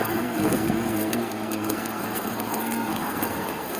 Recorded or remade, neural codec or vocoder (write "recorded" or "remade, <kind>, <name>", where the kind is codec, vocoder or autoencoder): remade, codec, SNAC